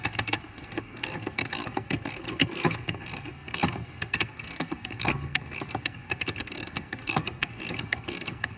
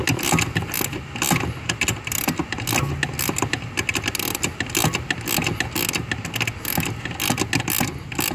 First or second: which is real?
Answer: second